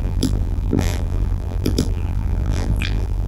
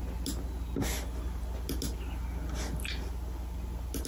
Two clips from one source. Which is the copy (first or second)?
first